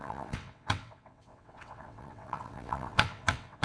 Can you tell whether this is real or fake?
fake